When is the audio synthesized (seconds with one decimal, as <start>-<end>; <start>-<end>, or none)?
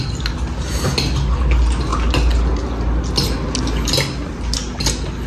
none